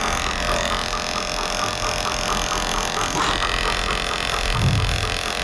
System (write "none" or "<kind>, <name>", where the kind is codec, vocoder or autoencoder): none